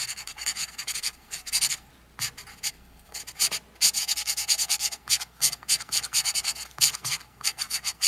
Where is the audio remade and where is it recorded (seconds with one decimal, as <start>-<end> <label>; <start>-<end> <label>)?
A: 0.0-1.9 remade; 1.9-2.7 recorded; 2.7-3.2 remade; 3.2-4.0 recorded; 4.0-8.1 remade